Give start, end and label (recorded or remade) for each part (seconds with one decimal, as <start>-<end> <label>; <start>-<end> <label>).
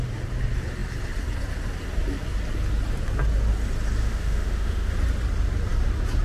0.0-4.0 recorded; 4.0-4.9 remade; 4.9-6.2 recorded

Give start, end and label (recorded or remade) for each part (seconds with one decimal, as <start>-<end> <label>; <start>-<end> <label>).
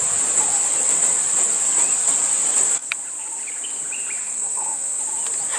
0.0-4.2 recorded; 4.2-5.0 remade; 5.0-5.6 recorded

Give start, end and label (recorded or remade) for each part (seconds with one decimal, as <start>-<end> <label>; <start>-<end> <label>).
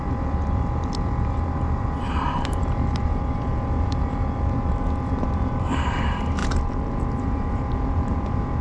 0.0-8.6 remade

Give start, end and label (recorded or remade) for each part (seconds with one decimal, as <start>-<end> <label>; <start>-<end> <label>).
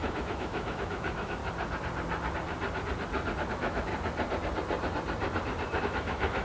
0.0-1.4 remade; 1.4-3.5 recorded; 3.5-3.9 remade; 3.9-5.8 recorded; 5.8-6.4 remade